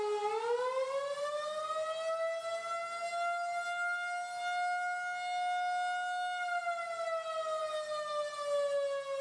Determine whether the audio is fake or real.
real